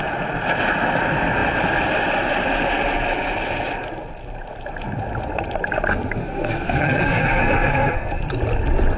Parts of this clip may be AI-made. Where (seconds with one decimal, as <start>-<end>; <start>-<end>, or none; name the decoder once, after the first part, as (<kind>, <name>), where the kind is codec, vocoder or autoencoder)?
6.2-8.2 (codec, SNAC)